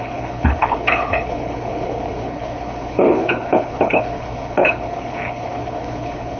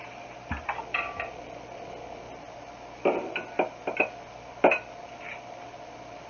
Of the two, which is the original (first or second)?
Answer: second